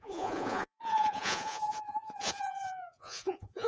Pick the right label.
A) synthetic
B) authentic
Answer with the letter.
A